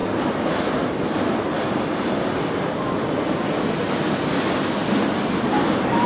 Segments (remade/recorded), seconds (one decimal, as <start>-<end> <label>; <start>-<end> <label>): 0.0-6.1 recorded